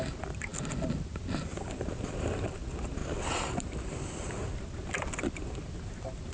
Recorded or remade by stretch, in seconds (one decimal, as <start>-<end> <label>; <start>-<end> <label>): 0.0-6.3 recorded